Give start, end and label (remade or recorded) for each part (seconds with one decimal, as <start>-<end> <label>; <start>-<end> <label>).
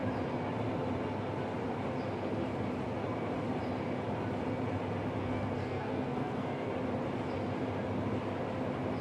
0.0-5.2 recorded; 5.2-6.7 remade; 6.7-9.0 recorded